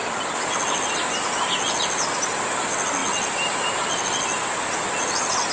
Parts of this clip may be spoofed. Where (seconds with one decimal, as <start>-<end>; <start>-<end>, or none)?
none